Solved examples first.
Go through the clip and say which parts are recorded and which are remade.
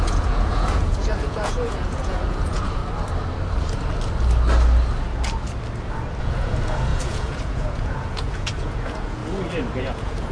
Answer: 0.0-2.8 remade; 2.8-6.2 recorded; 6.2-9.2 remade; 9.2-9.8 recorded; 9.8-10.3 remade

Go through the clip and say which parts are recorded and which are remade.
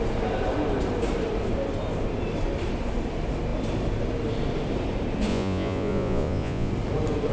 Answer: 0.0-5.3 recorded; 5.3-6.7 remade; 6.7-7.3 recorded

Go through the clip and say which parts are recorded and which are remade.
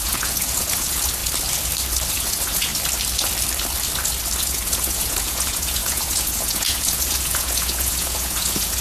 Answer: 0.0-1.2 remade; 1.2-2.1 recorded; 2.1-2.7 remade; 2.7-4.4 recorded; 4.4-8.8 remade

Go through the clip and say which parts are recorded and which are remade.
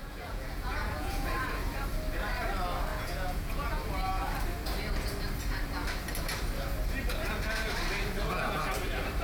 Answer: 0.0-1.4 remade; 1.4-2.9 recorded; 2.9-3.8 remade; 3.8-9.2 recorded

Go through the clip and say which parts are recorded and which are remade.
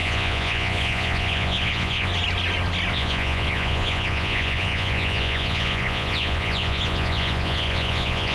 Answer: 0.0-2.1 remade; 2.1-2.9 recorded; 2.9-8.3 remade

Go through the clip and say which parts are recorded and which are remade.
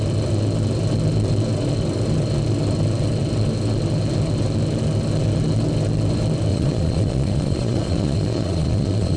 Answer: 0.0-6.5 recorded; 6.5-9.2 remade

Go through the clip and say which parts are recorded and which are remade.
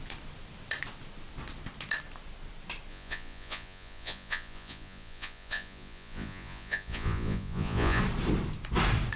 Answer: 0.0-2.9 recorded; 2.9-8.0 remade; 8.0-9.2 recorded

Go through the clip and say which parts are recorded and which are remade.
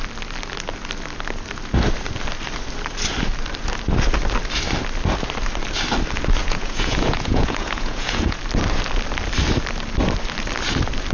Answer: 0.0-6.4 recorded; 6.4-8.4 remade; 8.4-11.1 recorded